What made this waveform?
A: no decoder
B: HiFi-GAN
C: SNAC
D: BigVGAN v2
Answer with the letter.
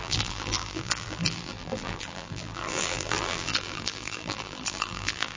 D